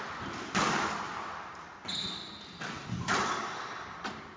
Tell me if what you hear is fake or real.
real